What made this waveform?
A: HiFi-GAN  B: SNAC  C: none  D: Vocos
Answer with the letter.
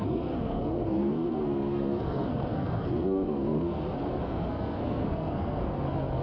B